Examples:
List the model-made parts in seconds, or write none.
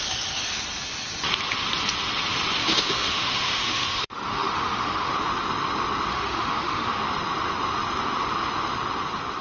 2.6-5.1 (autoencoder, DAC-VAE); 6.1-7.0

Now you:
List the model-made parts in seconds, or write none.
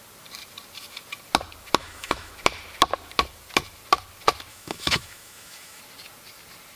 1.8-2.3 (autoencoder, DAC-VAE); 4.5-5.8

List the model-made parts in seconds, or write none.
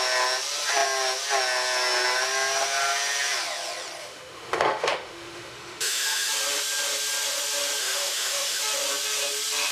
4.0-6.3 (autoencoder, DAC-VAE); 7.8-8.6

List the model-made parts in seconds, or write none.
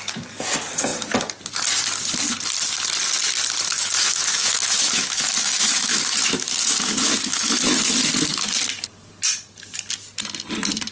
3.7-7.9 (autoencoder, DAC-VAE)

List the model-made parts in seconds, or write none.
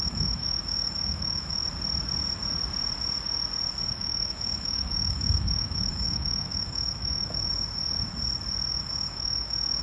0.0-1.6 (autoencoder, DAC-VAE); 3.9-7.5; 8.7-9.8